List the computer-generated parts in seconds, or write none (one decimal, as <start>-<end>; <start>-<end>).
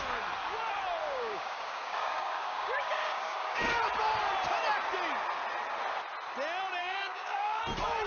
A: 1.0-3.7; 6.8-7.6